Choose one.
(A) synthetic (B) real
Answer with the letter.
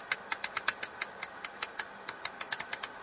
B